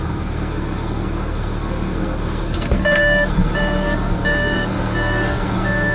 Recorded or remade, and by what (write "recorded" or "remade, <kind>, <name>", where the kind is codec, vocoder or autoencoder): remade, codec, SNAC